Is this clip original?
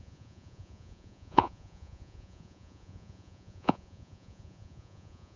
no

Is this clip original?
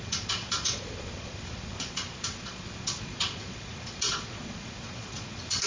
no